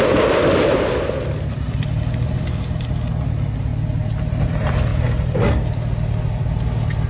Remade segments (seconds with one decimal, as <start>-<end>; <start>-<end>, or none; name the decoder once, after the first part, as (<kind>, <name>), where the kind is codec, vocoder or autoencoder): none